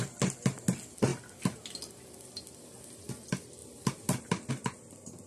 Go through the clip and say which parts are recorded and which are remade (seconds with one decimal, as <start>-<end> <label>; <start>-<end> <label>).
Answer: 0.0-3.6 recorded; 3.6-4.5 remade; 4.5-5.3 recorded